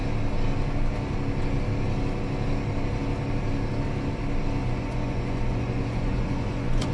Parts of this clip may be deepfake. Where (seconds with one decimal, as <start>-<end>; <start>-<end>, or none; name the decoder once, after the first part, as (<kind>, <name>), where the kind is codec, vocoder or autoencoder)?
4.6-6.9 (vocoder, Vocos)